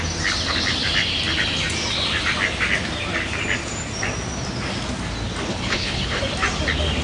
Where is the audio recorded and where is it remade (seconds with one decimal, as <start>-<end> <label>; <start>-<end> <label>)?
0.0-5.5 recorded; 5.5-6.2 remade; 6.2-7.0 recorded